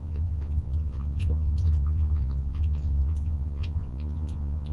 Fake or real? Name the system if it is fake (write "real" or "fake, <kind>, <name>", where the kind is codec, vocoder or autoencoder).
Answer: fake, vocoder, Vocos